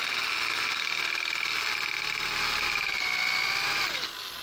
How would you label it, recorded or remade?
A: recorded